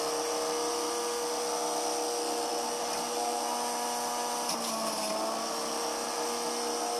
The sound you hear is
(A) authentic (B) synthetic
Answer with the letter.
A